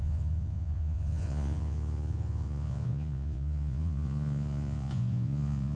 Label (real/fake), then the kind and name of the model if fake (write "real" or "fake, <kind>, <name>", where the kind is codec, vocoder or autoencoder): fake, vocoder, Vocos